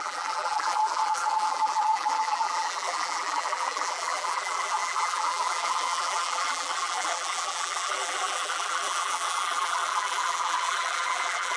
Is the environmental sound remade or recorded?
remade